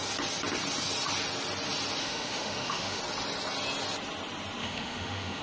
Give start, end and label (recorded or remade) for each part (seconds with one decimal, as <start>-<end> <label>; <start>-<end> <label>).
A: 0.0-2.0 recorded; 2.0-3.0 remade; 3.0-4.6 recorded; 4.6-5.4 remade